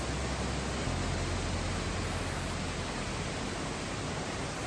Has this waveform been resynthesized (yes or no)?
no